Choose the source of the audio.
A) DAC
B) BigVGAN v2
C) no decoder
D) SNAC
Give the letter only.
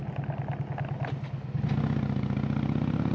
C